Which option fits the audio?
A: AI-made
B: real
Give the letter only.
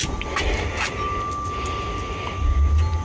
B